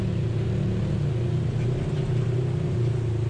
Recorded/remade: recorded